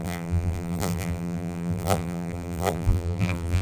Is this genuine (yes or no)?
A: no